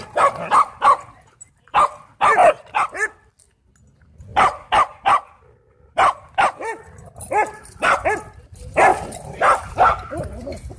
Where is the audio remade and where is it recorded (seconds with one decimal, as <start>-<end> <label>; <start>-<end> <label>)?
0.0-2.4 recorded; 2.4-3.1 remade; 3.1-4.3 recorded; 4.3-8.4 remade; 8.4-8.9 recorded; 8.9-9.7 remade; 9.7-10.8 recorded